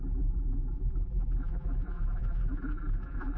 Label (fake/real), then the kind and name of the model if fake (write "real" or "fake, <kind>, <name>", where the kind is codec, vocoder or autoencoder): fake, vocoder, BigVGAN v2